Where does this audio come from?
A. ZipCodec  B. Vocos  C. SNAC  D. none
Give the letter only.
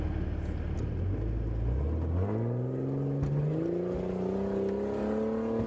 D